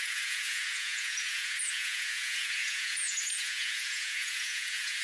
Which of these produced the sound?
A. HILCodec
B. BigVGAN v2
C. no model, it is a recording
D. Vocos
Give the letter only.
D